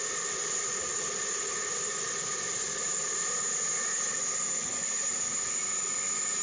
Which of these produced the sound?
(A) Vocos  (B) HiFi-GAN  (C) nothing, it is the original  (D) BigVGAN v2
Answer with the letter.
C